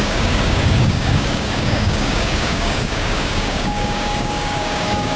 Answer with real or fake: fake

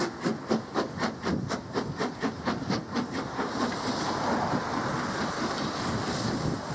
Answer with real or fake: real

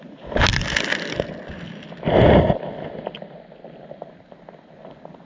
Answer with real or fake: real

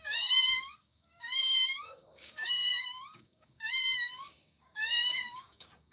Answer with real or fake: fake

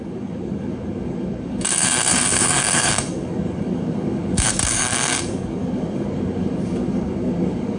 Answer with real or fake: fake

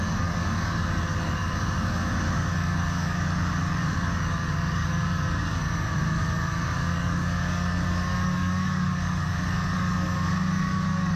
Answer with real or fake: fake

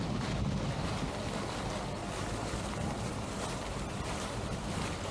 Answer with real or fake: real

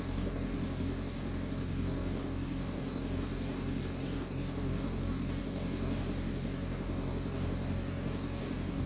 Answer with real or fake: fake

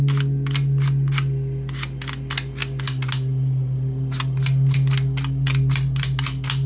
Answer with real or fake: real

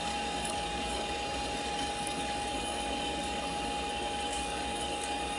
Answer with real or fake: fake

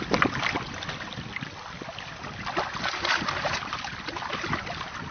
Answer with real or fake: real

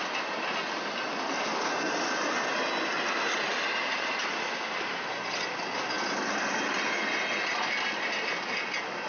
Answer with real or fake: real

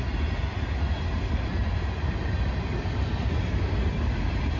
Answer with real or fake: real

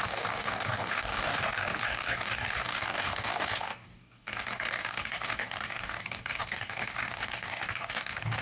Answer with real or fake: fake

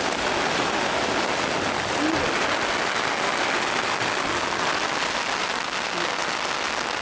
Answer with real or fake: real